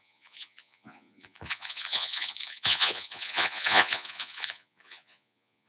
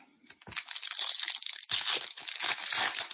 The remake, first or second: first